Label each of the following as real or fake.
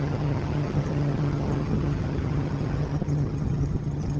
fake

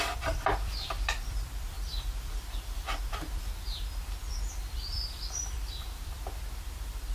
fake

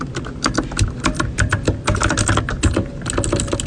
real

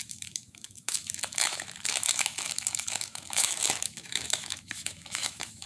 fake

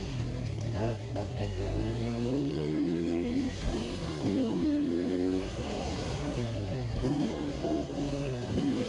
fake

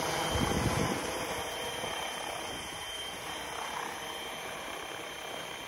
fake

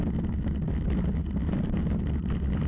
real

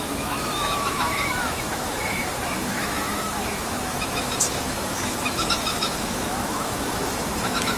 fake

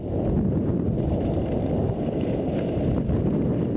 real